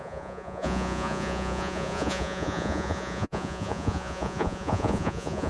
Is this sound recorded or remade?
remade